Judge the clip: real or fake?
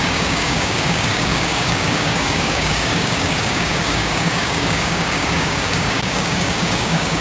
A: fake